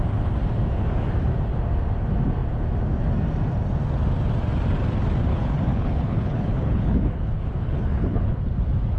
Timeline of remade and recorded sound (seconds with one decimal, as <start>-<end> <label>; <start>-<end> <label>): 0.0-5.3 recorded; 5.3-8.4 remade; 8.4-9.0 recorded